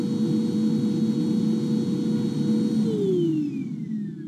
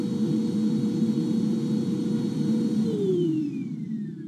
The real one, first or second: first